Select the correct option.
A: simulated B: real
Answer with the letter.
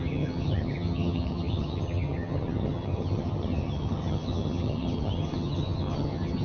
A